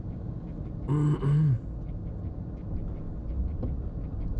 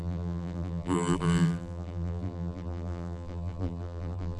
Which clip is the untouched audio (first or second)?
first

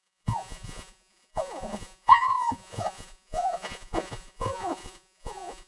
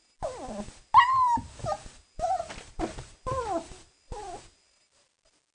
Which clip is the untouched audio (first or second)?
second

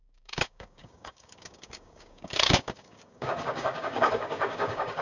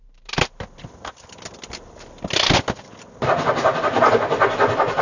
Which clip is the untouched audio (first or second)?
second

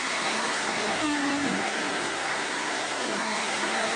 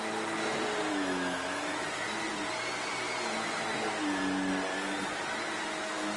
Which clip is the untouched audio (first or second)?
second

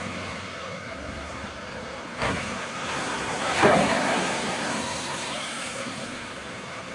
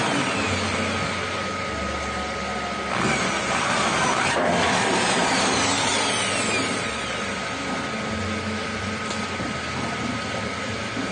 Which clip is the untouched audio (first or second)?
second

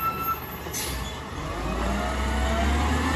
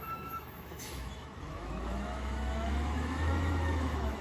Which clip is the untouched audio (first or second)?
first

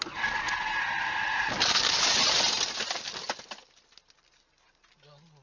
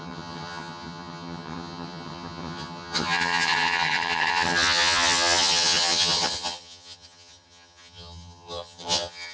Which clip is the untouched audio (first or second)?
first